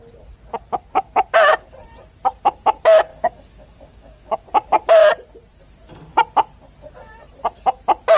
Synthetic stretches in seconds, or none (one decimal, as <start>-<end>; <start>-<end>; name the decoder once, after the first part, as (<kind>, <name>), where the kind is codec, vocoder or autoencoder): 3.1-4.4 (codec, DAC)